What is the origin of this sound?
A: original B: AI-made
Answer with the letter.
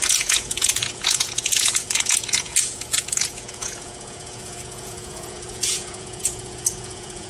B